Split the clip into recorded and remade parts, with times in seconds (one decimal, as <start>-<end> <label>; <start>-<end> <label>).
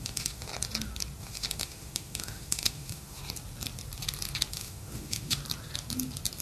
0.0-0.5 remade; 0.5-1.2 recorded; 1.2-3.2 remade; 3.2-4.5 recorded; 4.5-5.4 remade; 5.4-6.4 recorded